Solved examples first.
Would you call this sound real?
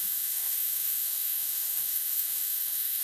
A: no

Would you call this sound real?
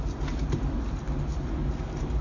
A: yes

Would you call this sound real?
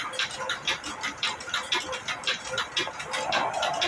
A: yes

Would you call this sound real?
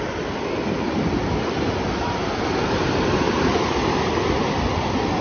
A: yes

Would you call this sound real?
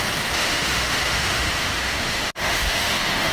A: no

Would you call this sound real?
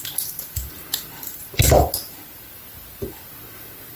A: yes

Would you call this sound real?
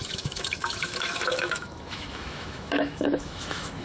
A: no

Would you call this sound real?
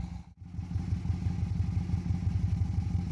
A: yes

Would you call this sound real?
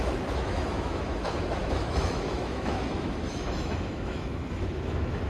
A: no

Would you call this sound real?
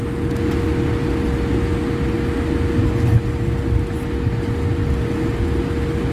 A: yes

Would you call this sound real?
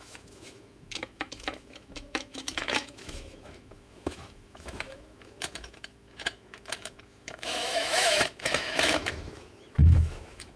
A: no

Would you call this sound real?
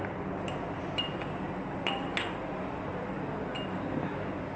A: yes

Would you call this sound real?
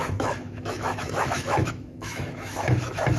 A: no